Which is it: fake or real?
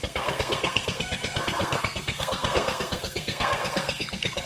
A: fake